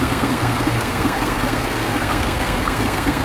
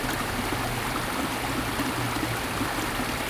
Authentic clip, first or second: second